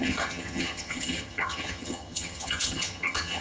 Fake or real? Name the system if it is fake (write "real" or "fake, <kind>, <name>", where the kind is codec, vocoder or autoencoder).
fake, vocoder, HiFi-GAN